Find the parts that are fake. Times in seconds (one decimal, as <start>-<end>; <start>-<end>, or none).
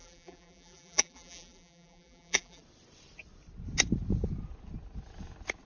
0.0-2.6